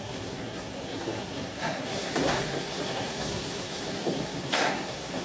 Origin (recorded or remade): remade